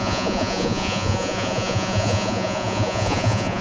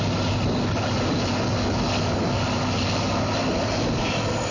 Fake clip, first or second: first